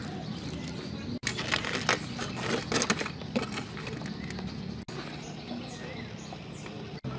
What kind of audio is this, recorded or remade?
recorded